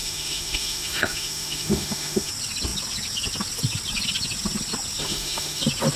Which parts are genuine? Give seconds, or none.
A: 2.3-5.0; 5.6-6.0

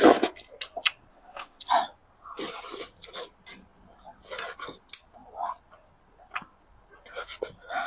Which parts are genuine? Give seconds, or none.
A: 0.0-1.1; 1.6-7.9

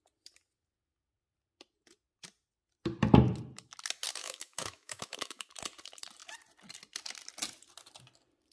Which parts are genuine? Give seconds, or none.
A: 0.0-4.2; 5.5-8.5